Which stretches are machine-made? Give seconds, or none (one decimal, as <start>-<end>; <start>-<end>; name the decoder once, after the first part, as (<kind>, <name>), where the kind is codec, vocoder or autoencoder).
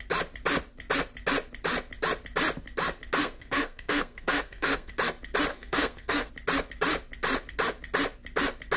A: 3.2-4.9 (codec, SNAC); 5.5-6.3